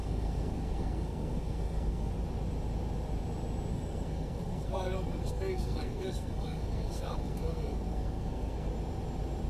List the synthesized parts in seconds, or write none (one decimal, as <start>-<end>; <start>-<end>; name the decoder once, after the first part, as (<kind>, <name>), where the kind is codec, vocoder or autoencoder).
0.0-2.1 (codec, SNAC); 3.7-8.7